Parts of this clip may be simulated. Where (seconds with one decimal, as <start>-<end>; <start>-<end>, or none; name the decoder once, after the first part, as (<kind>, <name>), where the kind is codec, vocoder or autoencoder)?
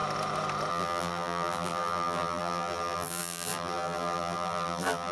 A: 0.7-5.1 (vocoder, BigVGAN v2)